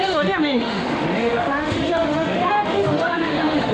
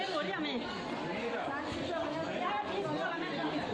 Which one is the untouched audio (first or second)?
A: second